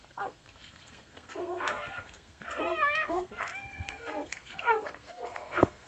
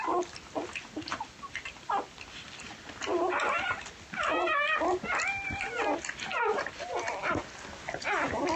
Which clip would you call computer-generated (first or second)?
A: first